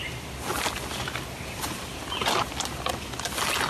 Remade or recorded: recorded